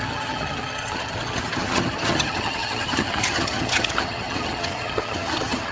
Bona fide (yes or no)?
no